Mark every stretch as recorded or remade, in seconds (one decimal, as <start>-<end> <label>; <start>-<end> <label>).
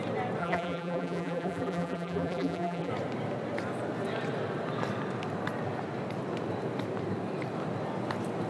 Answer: 0.0-0.4 recorded; 0.4-2.9 remade; 2.9-8.5 recorded